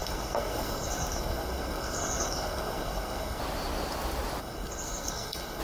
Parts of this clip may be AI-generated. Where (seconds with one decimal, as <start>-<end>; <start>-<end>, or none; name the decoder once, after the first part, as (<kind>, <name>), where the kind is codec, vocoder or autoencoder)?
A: 0.0-3.4 (codec, SNAC); 4.4-5.6